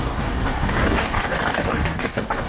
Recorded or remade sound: remade